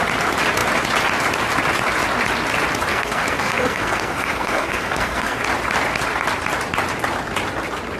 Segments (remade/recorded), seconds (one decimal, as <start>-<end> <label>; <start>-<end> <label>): 0.0-2.9 recorded; 2.9-5.4 remade; 5.4-8.0 recorded